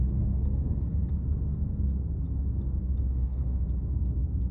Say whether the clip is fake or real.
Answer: fake